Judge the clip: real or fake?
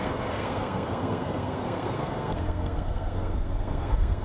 fake